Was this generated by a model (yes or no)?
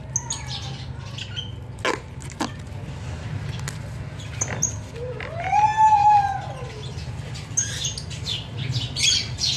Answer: no